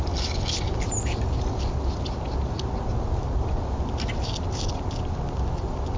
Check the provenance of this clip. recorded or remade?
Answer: recorded